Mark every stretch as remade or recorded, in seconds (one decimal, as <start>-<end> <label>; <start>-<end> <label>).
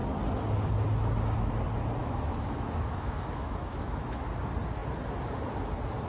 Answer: 0.0-2.0 recorded; 2.0-4.2 remade; 4.2-6.1 recorded